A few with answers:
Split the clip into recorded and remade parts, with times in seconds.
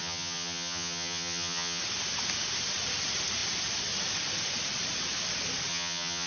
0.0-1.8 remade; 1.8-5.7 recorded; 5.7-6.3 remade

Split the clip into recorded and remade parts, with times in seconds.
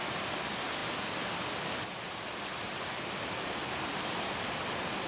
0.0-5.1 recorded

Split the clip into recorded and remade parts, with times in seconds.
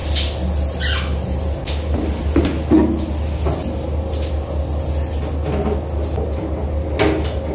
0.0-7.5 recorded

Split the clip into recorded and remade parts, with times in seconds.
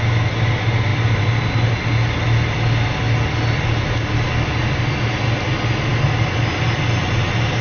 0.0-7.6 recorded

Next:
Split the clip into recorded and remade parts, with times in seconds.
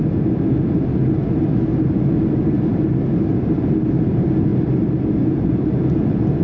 0.0-6.4 recorded